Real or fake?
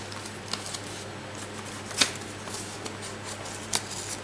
real